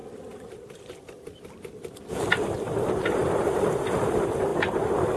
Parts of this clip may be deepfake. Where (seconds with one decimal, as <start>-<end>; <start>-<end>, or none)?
none

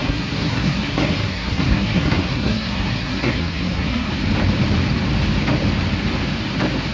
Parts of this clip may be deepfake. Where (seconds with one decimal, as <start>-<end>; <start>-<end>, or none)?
0.0-4.1

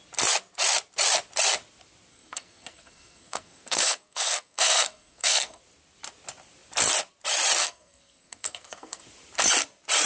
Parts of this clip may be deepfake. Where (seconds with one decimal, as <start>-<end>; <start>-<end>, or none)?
2.1-5.6; 7.6-9.0

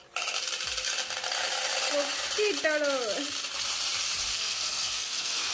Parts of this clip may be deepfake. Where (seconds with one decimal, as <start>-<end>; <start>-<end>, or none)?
4.3-5.5

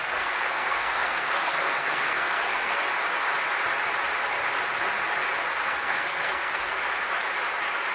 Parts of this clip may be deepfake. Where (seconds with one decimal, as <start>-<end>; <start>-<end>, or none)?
0.0-2.8; 5.5-6.8